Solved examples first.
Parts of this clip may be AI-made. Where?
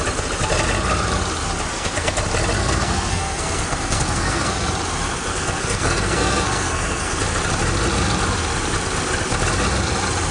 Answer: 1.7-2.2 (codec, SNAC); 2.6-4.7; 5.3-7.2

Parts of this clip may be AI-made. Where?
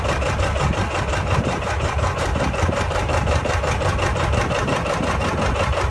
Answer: 1.1-4.0 (vocoder, BigVGAN v2)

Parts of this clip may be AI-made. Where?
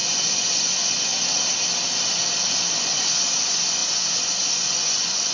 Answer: 0.0-1.1 (vocoder, Vocos); 2.7-5.3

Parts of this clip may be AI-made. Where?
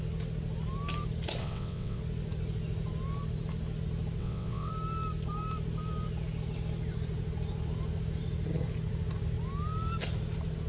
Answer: 1.4-2.0 (vocoder, WaveNeXt); 4.2-4.7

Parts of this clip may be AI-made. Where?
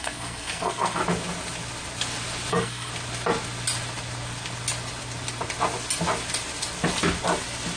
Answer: 0.0-1.0 (codec, SNAC); 2.5-2.9